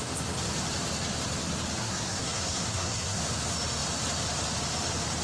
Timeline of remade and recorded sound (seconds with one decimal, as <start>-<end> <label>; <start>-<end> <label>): 0.0-1.8 recorded; 1.8-3.2 remade; 3.2-5.2 recorded